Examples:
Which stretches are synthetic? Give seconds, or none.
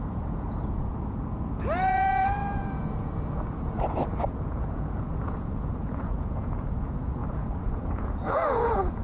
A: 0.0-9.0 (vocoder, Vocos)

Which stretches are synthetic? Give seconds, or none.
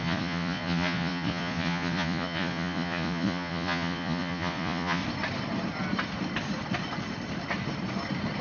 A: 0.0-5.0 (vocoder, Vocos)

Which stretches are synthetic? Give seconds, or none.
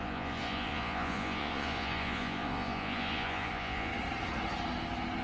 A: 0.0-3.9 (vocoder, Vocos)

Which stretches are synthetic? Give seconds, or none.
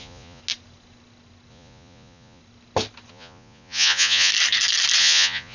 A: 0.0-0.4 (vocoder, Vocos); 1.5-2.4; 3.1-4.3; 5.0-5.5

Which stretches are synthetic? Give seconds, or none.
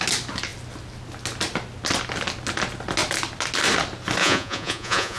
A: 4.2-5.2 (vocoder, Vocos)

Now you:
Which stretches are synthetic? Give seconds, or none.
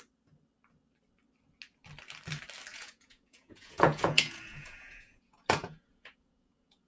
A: 2.7-6.9 (vocoder, Vocos)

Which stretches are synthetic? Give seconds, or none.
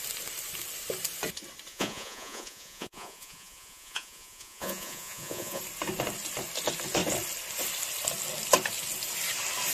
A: 1.7-5.6 (vocoder, Vocos)